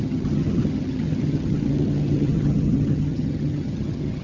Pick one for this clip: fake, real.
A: fake